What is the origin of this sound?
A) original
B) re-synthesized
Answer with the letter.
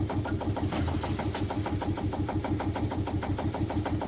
B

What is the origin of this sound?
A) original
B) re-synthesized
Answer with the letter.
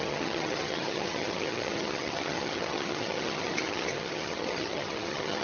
B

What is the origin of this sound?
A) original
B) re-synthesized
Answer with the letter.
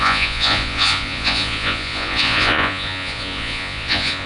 B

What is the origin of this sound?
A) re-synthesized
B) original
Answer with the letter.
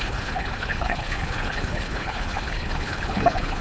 A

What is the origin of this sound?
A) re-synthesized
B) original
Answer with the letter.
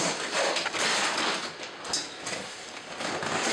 B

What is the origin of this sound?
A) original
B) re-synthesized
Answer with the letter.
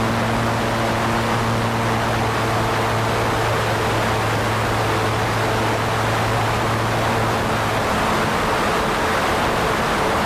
A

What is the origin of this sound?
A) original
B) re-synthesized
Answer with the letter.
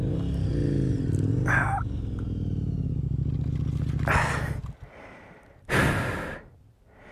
A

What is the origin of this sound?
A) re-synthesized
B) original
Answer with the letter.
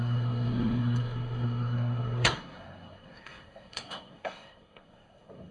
A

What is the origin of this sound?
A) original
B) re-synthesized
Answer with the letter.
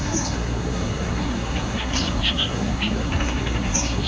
B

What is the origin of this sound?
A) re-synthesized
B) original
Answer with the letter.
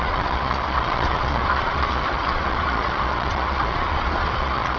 A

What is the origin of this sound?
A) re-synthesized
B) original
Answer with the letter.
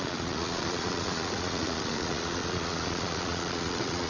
A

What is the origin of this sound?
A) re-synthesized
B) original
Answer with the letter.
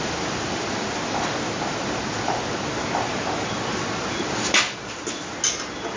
B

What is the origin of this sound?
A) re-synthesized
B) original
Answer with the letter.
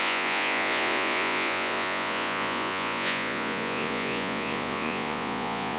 A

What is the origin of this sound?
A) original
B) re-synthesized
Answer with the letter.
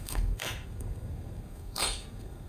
B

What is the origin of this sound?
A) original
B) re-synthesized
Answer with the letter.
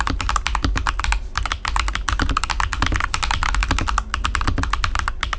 A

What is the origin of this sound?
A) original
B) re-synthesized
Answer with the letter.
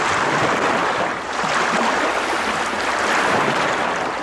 A